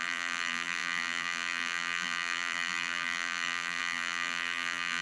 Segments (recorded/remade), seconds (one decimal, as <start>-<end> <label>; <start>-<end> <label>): 0.0-5.0 remade